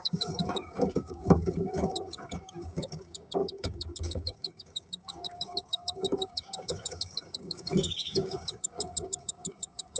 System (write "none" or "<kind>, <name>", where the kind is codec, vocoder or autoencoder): codec, DAC